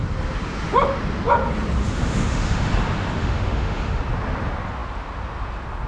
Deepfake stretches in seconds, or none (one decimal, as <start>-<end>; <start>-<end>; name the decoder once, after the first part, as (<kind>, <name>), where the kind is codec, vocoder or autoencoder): 1.8-2.7 (autoencoder, DAC-VAE); 3.2-4.0